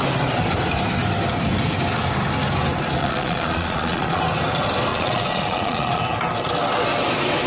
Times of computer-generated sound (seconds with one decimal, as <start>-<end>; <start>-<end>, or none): 3.0-4.2; 4.9-6.0